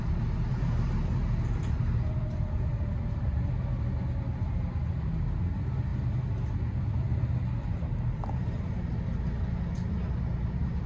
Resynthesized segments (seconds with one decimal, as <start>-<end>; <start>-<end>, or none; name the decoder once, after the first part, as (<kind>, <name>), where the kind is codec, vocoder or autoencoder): 0.5-1.3 (vocoder, BigVGAN v2); 2.7-3.5